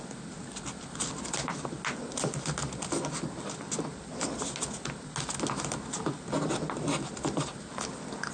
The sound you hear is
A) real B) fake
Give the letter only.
A